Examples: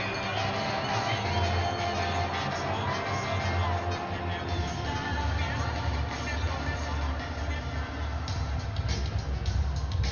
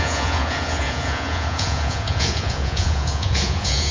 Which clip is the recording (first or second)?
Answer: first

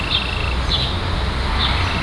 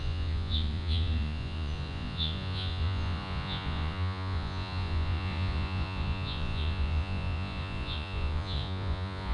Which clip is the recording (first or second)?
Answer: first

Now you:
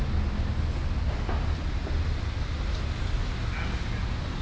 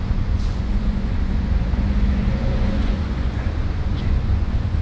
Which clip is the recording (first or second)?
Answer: first